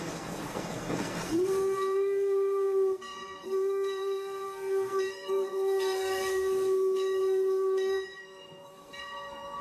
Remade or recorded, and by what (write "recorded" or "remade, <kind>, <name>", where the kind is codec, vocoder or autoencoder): remade, codec, SNAC